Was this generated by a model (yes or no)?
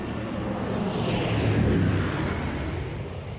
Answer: no